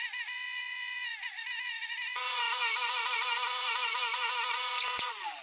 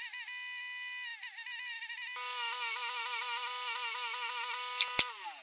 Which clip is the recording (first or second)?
second